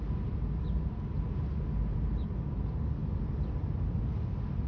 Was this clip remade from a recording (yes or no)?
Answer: no